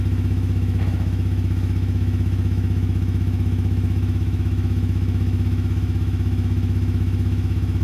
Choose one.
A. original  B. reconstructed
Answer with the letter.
B